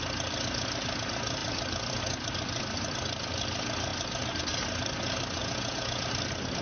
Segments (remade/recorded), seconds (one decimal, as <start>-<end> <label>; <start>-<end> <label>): 0.0-5.4 recorded; 5.4-6.1 remade; 6.1-6.6 recorded